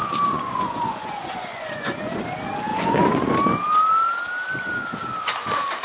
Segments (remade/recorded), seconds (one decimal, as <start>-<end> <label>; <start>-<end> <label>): 0.0-2.2 remade; 2.2-2.7 recorded; 2.7-3.3 remade; 3.3-5.8 recorded